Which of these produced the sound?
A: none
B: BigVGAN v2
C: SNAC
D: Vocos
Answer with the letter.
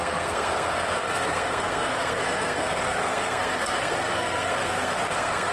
C